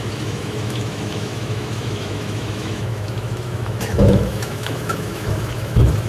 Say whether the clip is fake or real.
fake